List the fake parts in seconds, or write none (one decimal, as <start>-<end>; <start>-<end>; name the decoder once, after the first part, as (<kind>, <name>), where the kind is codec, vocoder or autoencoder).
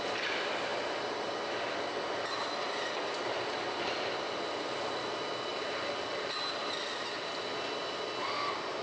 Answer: 5.5-6.3 (vocoder, BigVGAN v2)